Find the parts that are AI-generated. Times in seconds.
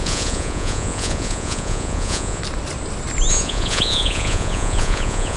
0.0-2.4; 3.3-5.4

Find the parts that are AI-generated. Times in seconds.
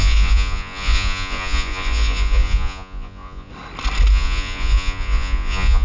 0.0-3.5; 4.1-5.8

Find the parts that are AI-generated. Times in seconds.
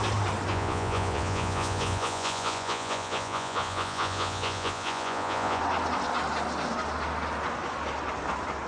0.5-5.6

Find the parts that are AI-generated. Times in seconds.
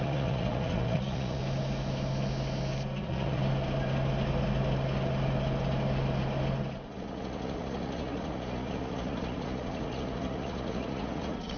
0.0-1.4; 3.0-3.4; 6.9-11.6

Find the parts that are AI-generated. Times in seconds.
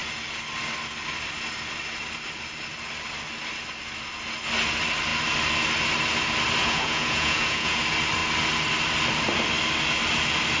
6.6-7.8